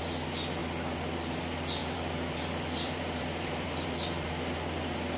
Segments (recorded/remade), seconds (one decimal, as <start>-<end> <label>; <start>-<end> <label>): 0.0-1.8 recorded; 1.8-4.3 remade; 4.3-5.2 recorded